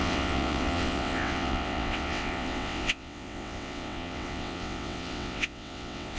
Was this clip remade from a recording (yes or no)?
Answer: yes